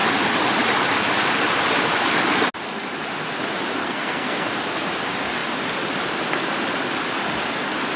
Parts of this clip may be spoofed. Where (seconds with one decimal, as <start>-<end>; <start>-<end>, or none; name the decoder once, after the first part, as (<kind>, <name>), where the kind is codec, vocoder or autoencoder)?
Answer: 3.8-4.5 (codec, SNAC)